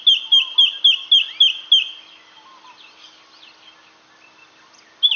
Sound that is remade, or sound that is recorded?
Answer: recorded